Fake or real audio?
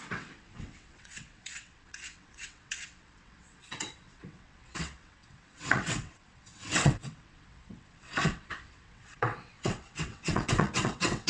fake